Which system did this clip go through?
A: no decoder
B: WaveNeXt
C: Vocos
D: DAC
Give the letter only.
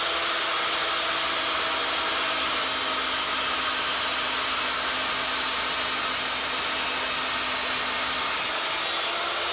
A